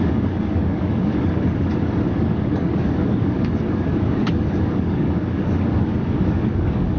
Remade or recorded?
remade